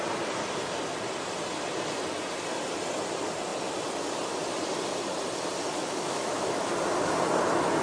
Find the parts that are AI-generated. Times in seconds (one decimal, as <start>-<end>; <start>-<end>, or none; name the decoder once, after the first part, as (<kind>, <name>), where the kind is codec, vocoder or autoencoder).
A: 5.7-6.7 (autoencoder, DAC-VAE)